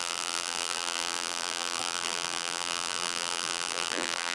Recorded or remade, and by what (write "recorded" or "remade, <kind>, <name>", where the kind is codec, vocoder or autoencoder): remade, vocoder, BigVGAN v2